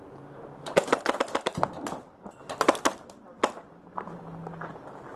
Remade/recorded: recorded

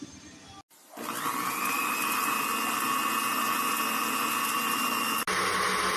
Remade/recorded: recorded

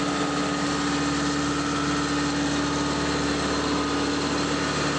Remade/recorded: recorded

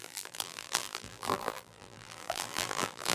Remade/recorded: remade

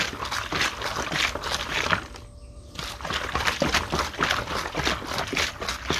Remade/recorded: recorded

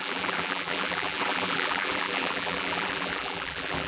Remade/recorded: remade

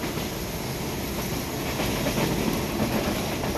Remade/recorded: recorded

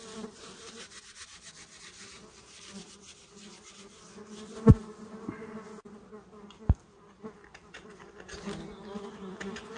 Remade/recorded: recorded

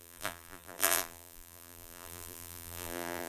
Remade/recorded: remade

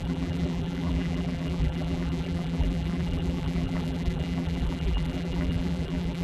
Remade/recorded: remade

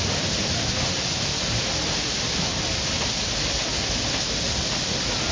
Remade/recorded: recorded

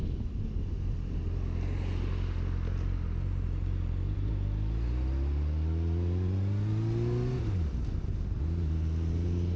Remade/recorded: recorded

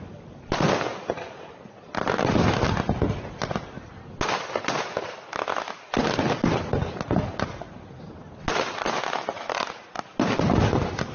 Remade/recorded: recorded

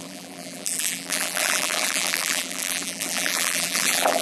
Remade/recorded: remade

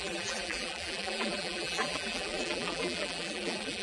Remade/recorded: remade